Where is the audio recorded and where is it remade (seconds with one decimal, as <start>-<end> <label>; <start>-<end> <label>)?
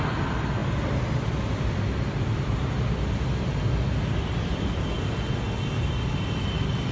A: 0.0-6.9 recorded